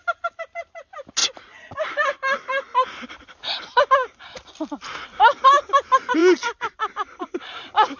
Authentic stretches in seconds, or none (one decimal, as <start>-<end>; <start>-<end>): 0.0-8.0

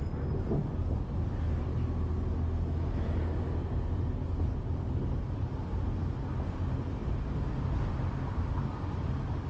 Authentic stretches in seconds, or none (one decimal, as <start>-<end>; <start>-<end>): 0.0-9.5

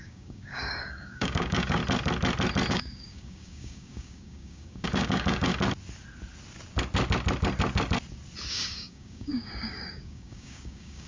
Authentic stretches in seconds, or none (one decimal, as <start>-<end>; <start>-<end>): 1.8-2.7; 5.5-8.5

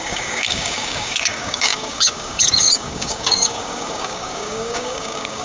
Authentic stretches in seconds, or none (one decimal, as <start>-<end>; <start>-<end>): none

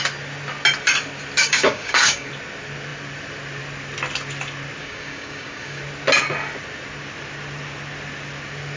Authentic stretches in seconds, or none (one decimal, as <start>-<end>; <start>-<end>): 0.0-1.4; 2.3-4.8; 5.8-8.8